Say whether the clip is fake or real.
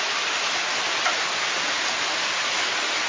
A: real